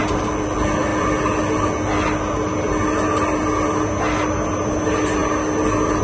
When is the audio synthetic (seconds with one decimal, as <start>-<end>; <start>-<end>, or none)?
none